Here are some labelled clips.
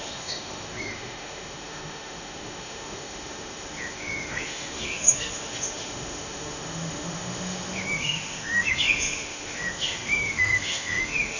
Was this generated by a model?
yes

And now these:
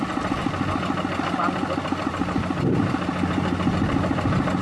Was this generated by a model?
no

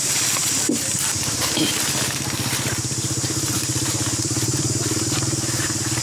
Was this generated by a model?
yes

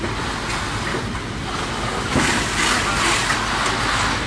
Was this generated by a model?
no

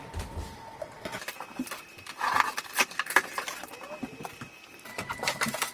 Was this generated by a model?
no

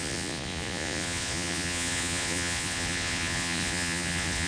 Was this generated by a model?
yes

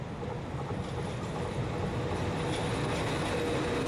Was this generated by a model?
no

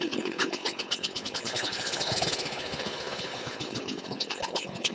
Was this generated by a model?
yes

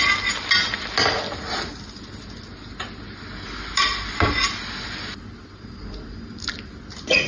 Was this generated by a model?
no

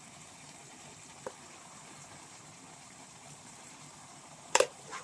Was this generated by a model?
yes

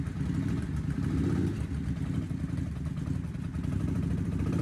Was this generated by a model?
no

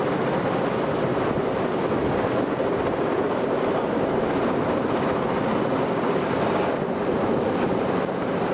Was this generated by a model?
no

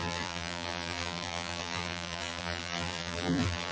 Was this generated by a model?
yes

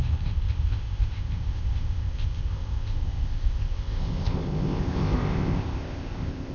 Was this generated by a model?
yes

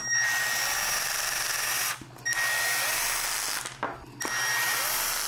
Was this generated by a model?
no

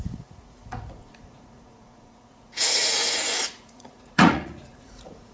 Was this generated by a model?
yes